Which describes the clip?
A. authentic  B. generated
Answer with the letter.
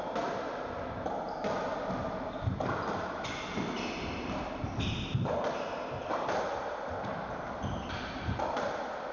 A